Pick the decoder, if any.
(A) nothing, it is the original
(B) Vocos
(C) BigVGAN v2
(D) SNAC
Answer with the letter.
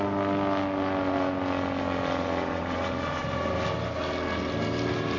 A